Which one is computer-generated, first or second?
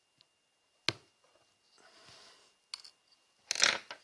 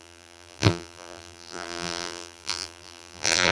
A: second